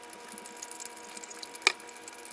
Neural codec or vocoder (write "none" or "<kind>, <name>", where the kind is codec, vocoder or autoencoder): none